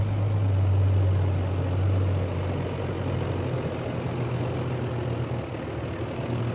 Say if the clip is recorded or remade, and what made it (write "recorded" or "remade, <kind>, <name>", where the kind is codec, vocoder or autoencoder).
recorded